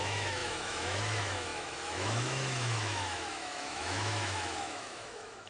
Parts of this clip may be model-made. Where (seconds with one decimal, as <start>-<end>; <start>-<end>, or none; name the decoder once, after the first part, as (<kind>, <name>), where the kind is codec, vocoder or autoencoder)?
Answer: 0.0-5.5 (autoencoder, DAC-VAE)